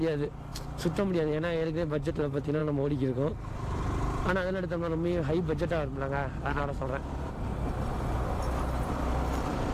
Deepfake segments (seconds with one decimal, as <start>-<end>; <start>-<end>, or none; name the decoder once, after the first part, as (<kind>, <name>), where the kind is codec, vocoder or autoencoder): none